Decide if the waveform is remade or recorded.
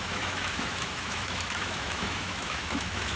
remade